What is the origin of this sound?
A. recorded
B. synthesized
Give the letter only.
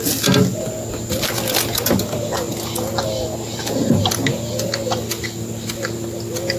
A